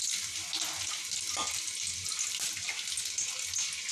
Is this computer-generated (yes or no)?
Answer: no